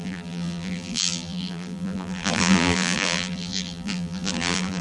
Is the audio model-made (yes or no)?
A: yes